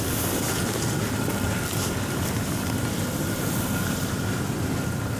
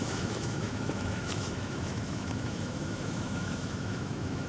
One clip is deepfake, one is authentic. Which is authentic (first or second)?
first